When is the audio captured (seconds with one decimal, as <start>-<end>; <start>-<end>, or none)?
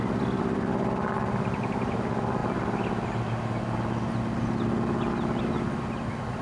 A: 2.4-5.4